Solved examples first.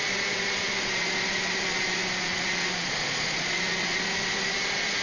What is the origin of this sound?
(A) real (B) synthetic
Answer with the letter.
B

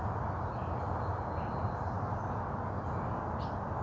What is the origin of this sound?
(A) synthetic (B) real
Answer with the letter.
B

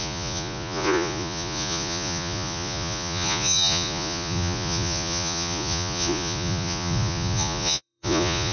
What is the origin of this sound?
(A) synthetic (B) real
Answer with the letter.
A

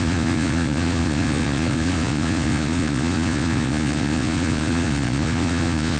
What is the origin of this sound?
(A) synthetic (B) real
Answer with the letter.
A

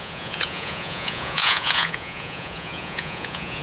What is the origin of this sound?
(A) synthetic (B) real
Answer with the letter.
A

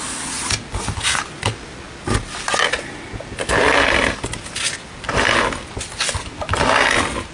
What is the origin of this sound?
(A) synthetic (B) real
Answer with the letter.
B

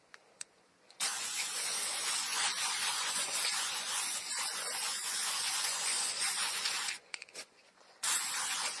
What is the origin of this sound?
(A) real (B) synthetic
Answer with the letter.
B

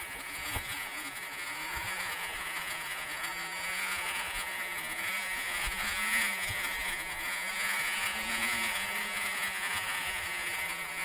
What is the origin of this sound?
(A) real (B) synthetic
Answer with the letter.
B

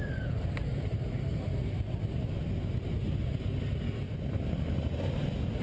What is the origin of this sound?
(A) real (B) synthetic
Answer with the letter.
A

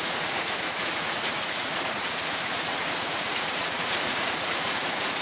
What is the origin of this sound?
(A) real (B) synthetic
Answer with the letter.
B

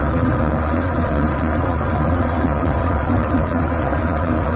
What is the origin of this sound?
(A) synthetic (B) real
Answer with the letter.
A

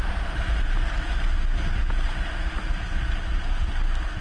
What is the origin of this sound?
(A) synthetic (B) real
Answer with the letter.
B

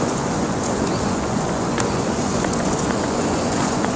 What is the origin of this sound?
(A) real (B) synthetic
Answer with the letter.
B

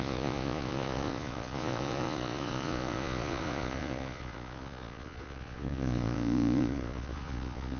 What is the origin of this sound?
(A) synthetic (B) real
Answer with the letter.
A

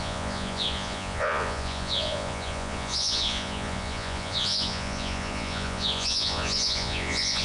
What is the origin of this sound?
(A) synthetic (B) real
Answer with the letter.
A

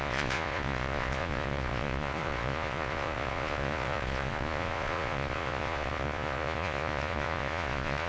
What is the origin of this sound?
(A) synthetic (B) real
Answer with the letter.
A